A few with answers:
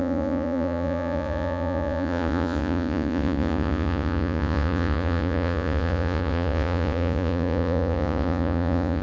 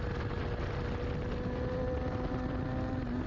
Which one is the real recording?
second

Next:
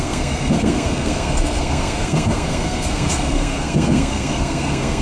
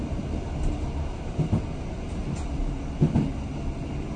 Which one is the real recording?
second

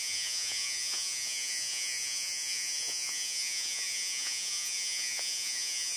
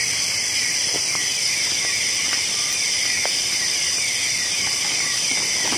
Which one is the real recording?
second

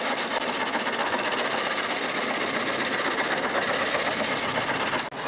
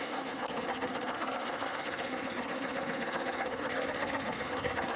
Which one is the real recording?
first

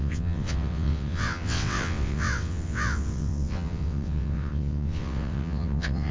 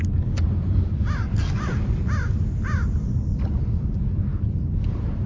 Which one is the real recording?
second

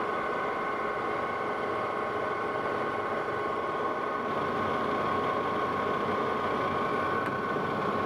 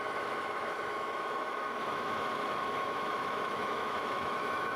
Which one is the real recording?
first